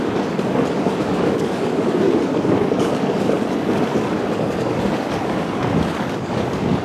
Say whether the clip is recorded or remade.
remade